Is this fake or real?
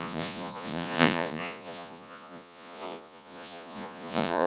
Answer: fake